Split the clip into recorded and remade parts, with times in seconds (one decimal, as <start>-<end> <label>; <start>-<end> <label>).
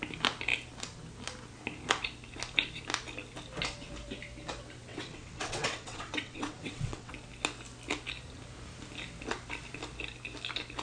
0.0-4.9 recorded; 4.9-7.1 remade; 7.1-10.8 recorded